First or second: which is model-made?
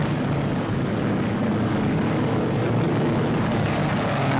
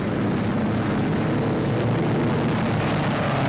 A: first